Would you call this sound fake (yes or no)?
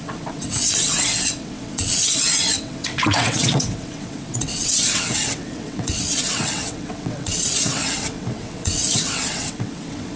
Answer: yes